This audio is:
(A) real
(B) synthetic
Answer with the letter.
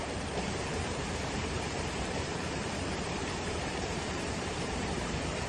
B